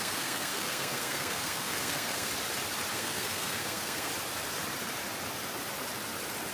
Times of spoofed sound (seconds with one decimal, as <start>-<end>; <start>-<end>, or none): 0.0-2.3; 2.9-4.1